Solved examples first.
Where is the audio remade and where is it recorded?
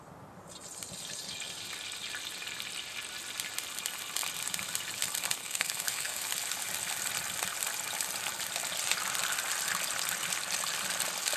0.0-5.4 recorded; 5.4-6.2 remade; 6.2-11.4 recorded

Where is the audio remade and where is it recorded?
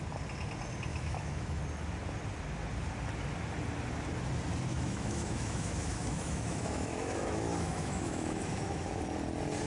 0.0-0.9 recorded; 0.9-1.6 remade; 1.6-4.7 recorded; 4.7-9.0 remade; 9.0-9.7 recorded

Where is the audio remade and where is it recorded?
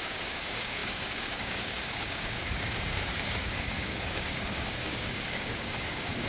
0.0-6.3 remade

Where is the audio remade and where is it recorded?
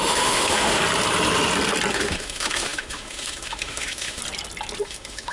0.0-0.8 remade; 0.8-1.9 recorded; 1.9-4.2 remade; 4.2-4.8 recorded; 4.8-5.3 remade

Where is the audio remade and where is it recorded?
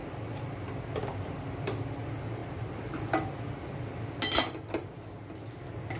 0.0-6.0 recorded